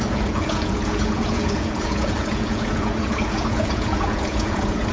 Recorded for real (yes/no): no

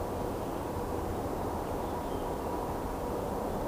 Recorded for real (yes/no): yes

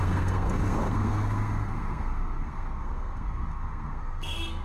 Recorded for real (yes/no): no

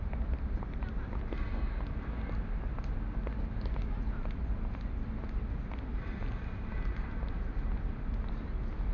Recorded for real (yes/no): yes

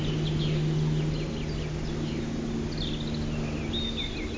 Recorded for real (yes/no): yes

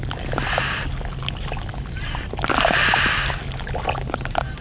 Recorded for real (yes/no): yes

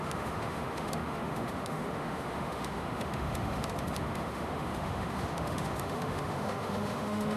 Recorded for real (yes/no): no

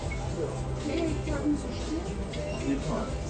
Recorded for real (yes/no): yes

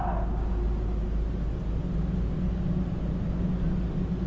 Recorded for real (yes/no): yes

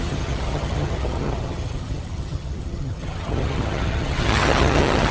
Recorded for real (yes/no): no